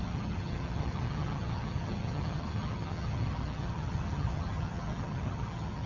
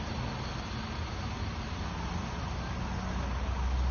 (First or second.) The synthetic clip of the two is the first